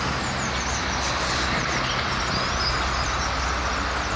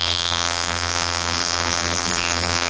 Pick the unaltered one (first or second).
first